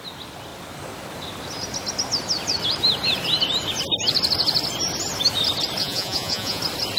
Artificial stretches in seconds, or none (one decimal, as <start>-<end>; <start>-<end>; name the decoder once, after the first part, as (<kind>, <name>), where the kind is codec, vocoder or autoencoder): 5.8-6.6 (vocoder, Vocos)